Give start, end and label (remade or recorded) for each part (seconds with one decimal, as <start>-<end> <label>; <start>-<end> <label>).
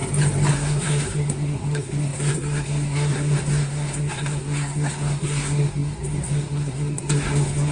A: 0.0-0.5 recorded; 0.5-7.7 remade